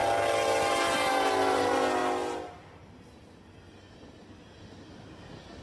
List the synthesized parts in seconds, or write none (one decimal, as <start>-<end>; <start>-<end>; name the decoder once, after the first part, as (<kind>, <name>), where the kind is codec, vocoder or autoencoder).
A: none